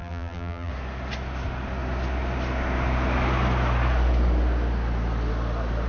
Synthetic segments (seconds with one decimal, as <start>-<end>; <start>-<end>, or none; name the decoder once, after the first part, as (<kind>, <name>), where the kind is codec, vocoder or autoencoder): 0.0-0.7 (vocoder, BigVGAN v2)